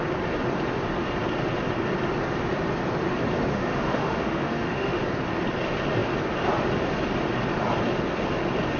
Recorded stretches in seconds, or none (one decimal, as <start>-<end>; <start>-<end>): 0.0-3.5; 5.0-8.8